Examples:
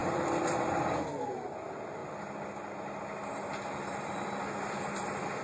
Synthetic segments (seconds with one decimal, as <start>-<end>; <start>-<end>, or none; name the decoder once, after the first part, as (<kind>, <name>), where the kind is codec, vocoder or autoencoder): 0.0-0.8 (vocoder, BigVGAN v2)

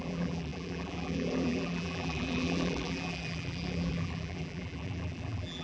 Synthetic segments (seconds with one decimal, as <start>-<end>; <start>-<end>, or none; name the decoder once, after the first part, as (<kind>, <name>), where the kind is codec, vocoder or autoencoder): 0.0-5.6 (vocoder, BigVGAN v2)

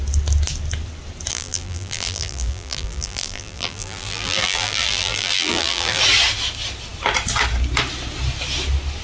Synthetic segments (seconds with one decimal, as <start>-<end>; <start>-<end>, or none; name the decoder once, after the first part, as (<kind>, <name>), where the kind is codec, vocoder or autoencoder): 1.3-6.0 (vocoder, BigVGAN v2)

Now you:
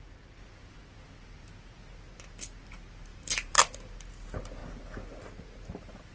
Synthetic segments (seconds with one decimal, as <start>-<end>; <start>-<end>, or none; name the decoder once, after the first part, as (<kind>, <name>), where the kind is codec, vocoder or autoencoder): 3.1-3.9 (vocoder, BigVGAN v2)